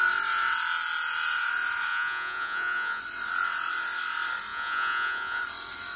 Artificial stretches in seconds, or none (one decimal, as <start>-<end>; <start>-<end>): 1.9-3.0; 4.5-5.4